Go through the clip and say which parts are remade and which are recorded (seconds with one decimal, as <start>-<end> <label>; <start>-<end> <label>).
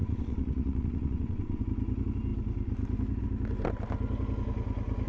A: 0.0-1.6 remade; 1.6-5.1 recorded